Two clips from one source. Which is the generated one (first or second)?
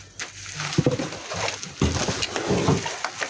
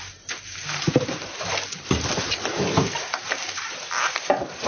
second